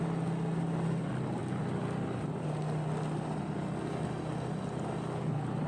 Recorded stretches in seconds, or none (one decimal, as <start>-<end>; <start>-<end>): 0.0-5.7